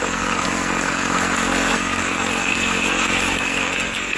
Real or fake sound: fake